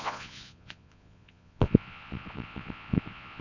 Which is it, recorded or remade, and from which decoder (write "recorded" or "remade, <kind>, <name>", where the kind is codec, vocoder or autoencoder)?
remade, vocoder, Vocos